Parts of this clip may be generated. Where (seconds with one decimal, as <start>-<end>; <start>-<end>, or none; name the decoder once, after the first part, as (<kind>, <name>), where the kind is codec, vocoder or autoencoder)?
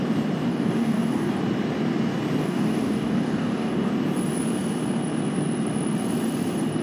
0.5-1.4 (codec, DAC); 2.4-3.9